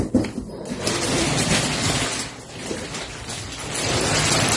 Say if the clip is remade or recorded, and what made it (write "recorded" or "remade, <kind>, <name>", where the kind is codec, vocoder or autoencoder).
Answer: recorded